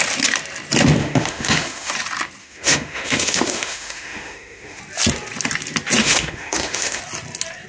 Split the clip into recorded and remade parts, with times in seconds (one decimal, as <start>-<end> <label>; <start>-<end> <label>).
0.0-1.0 recorded; 1.0-1.9 remade; 1.9-2.4 recorded; 2.4-4.8 remade; 4.8-6.0 recorded; 6.0-7.0 remade; 7.0-7.7 recorded